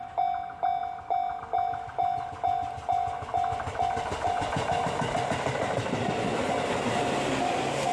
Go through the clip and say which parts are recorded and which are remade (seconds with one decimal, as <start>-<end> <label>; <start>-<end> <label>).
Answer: 0.0-7.9 recorded